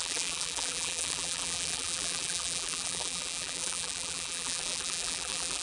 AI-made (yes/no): yes